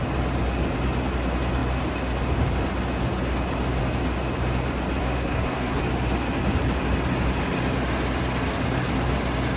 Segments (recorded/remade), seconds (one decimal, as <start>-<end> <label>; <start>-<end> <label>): 0.0-5.0 recorded; 5.0-5.8 remade; 5.8-9.6 recorded